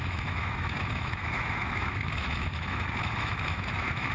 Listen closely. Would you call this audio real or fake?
fake